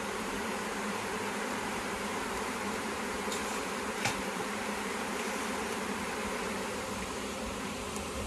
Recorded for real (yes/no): no